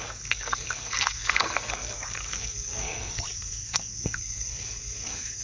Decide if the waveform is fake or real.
fake